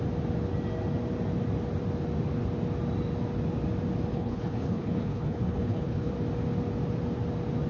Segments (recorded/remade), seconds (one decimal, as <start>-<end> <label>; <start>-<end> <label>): 0.0-4.1 recorded; 4.1-6.1 remade; 6.1-7.7 recorded